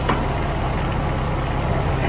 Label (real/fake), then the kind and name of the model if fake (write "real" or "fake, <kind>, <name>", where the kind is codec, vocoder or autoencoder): real